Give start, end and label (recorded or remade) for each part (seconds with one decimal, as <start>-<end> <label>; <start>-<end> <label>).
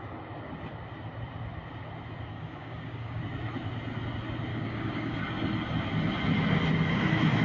0.0-2.3 recorded; 2.3-3.2 remade; 3.2-4.5 recorded; 4.5-5.2 remade; 5.2-7.4 recorded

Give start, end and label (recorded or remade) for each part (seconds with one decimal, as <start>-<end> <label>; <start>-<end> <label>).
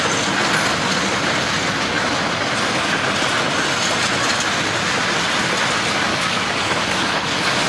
0.0-6.1 recorded; 6.1-7.7 remade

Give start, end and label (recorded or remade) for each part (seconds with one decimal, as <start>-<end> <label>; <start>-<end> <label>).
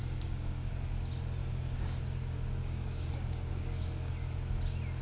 0.0-0.7 remade; 0.7-1.4 recorded; 1.4-2.0 remade; 2.0-2.6 recorded; 2.6-4.1 remade; 4.1-5.0 recorded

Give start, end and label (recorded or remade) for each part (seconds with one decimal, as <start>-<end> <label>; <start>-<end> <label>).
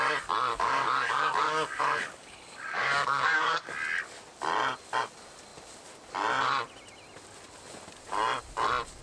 0.0-0.5 recorded; 0.5-3.7 remade; 3.7-9.0 recorded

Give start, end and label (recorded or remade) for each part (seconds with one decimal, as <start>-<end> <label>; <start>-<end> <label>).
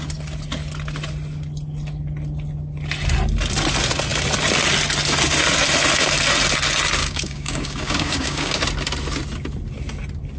0.0-7.0 recorded; 7.0-8.6 remade; 8.6-10.4 recorded